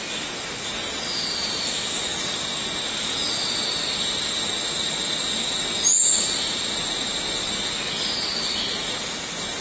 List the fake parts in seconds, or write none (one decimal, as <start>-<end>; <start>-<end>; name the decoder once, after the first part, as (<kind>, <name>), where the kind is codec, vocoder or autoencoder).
none